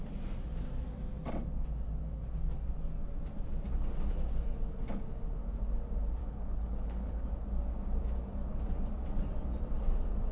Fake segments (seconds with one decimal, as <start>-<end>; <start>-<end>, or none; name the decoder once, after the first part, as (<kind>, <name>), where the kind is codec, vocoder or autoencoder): 6.2-7.3 (codec, HILCodec)